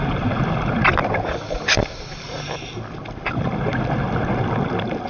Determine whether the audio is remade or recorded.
recorded